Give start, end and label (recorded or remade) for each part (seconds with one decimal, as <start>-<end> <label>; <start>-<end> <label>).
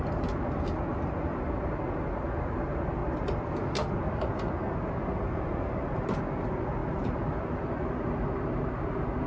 0.0-9.3 recorded